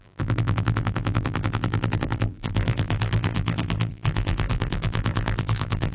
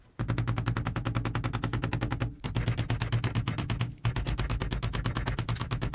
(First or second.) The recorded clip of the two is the second